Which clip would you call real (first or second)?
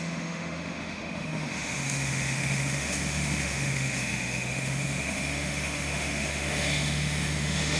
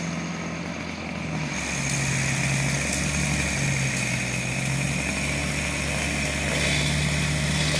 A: second